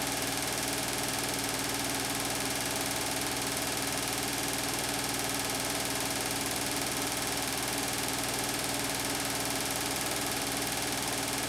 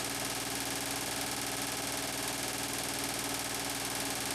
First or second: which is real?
second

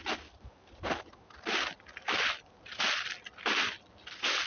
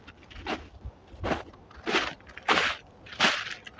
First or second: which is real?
first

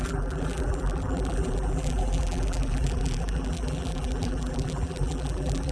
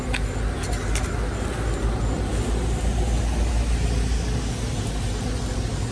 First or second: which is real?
second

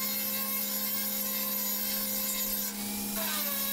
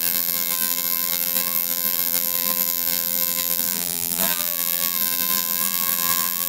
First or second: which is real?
first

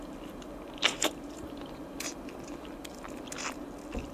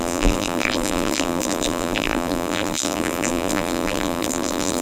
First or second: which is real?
first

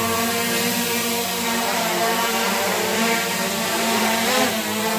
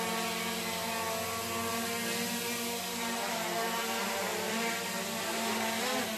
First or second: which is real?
second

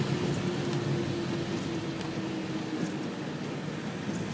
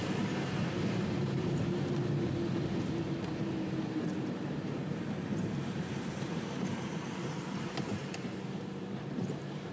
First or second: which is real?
first